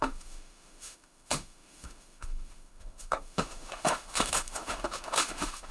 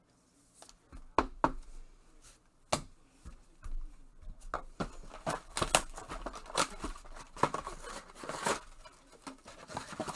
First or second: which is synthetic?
first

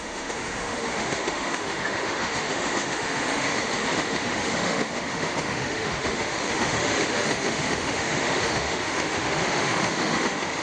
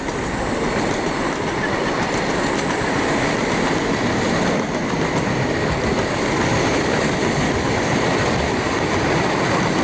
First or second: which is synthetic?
first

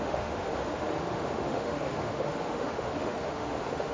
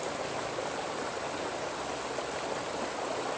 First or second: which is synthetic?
first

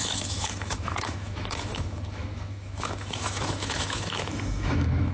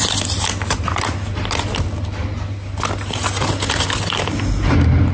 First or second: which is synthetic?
first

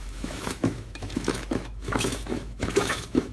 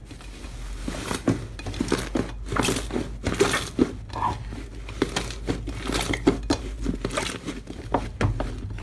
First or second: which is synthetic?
first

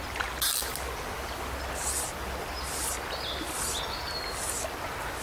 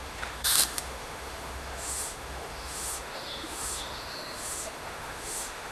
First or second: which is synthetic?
second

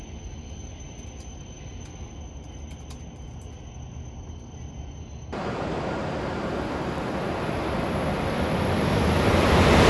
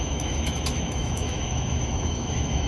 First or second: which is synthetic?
second